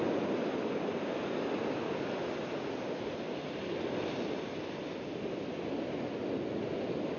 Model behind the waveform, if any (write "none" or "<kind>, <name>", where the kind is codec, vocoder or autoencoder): none